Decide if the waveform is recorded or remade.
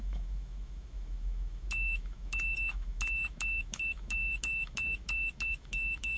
remade